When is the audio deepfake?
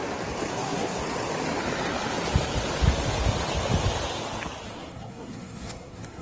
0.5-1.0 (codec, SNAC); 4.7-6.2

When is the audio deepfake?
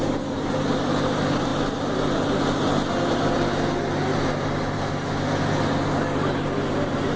none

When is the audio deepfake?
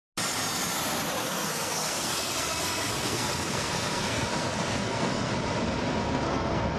1.2-5.3 (codec, SNAC); 5.9-6.8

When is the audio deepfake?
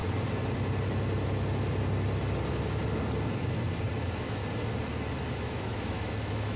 4.0-4.4 (autoencoder, DAC-VAE); 5.3-6.6